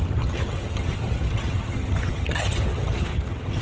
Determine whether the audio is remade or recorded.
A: remade